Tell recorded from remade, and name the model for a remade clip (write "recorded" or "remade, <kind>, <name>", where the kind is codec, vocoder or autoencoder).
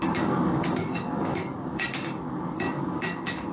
remade, codec, DAC